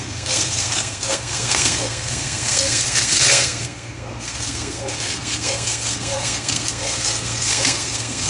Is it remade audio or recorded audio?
remade